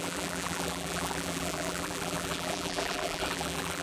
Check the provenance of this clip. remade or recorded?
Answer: remade